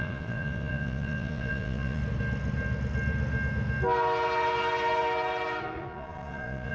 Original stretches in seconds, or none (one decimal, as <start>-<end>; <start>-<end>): 2.0-5.6